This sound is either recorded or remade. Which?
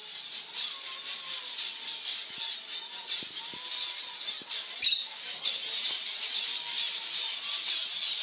recorded